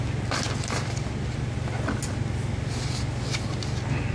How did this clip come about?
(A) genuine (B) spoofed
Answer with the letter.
A